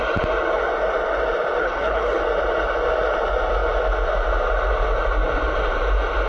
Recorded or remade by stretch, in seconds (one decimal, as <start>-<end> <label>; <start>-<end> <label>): 0.0-1.6 recorded; 1.6-2.2 remade; 2.2-6.3 recorded